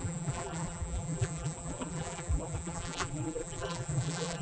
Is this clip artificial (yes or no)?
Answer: yes